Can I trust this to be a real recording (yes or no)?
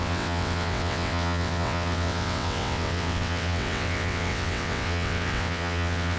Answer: no